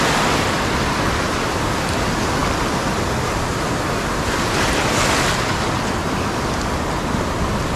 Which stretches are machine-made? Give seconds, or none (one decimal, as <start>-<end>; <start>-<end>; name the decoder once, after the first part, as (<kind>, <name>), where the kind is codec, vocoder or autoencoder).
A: none